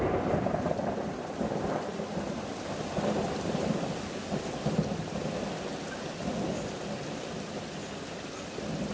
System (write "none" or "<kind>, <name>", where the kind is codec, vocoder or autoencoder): none